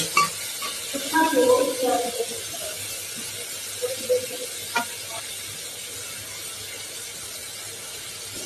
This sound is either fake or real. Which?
real